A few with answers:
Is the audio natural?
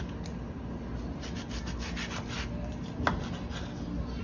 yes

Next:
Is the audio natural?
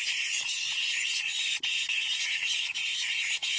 yes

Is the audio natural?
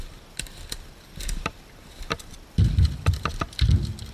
yes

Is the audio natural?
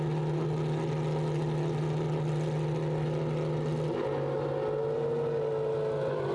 yes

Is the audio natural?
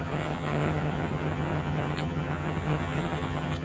no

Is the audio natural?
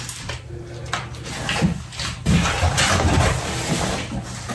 yes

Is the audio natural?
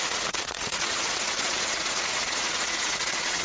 no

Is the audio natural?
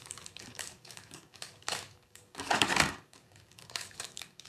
no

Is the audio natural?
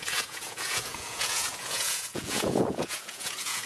no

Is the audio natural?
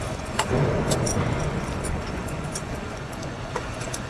no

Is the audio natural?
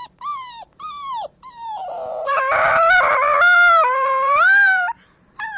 no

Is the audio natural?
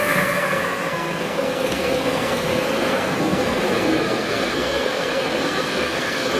no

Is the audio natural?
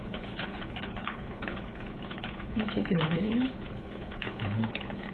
no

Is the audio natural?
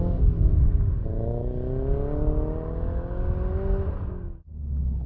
yes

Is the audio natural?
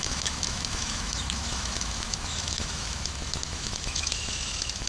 no